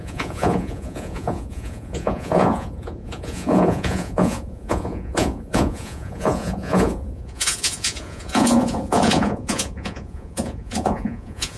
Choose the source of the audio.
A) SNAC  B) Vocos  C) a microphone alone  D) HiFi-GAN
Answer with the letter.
B